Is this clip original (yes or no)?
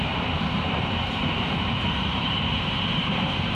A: no